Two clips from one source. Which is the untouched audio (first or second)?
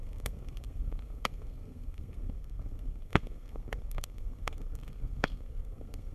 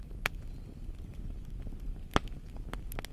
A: second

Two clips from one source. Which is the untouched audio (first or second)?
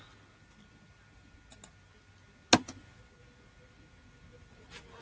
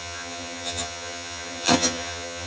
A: first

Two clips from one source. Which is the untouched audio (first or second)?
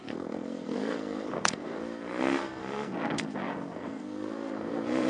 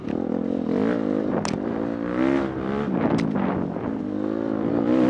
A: second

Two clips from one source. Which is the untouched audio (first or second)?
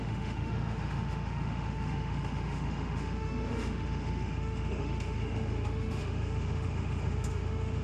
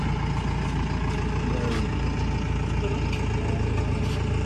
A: second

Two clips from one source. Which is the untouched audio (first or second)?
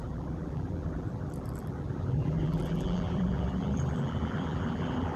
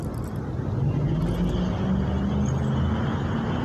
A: second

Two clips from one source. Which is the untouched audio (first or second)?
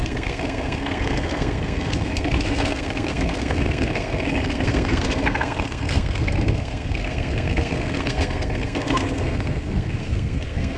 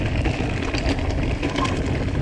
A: second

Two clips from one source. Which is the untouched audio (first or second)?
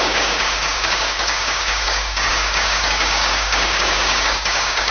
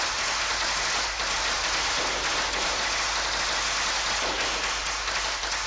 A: second